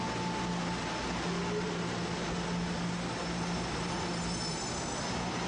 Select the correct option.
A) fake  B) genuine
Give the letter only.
B